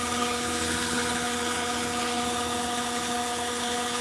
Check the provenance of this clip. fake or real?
fake